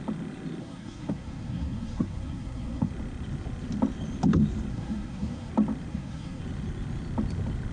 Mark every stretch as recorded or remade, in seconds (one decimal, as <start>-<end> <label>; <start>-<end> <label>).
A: 0.0-0.6 recorded; 0.6-2.9 remade; 2.9-4.7 recorded; 4.7-5.5 remade; 5.5-5.9 recorded; 5.9-6.4 remade; 6.4-7.7 recorded